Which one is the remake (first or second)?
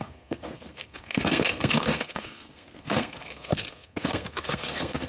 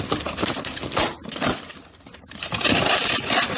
first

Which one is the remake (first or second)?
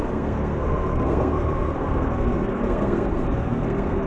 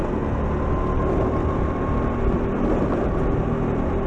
first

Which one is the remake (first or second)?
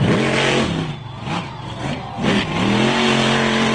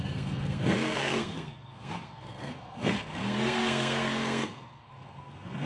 second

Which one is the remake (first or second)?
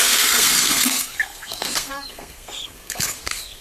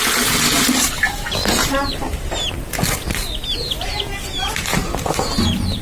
first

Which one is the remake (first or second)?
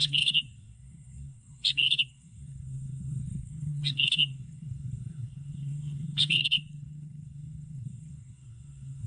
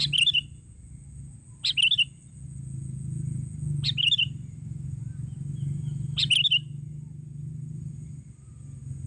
first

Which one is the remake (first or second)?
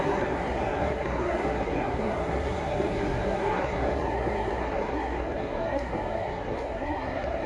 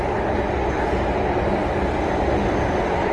first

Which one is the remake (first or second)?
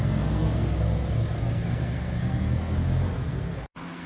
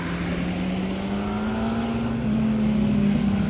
first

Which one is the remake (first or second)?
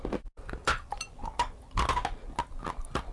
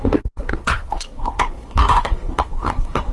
second